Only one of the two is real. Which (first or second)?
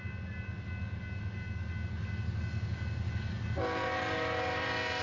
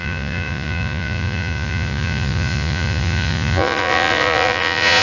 first